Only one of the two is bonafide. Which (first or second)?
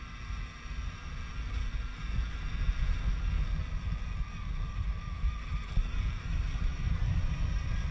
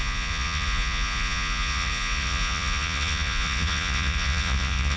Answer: first